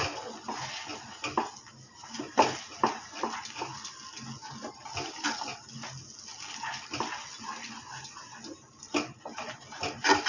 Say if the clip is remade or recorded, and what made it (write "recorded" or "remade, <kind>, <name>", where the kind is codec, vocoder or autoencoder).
recorded